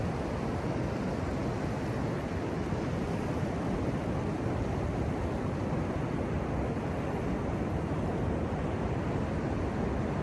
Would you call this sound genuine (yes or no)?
yes